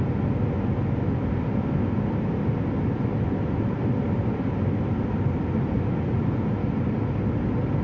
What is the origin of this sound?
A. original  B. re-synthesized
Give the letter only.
A